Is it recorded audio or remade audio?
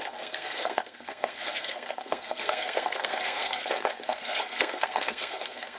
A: remade